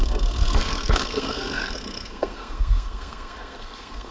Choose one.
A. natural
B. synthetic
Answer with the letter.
B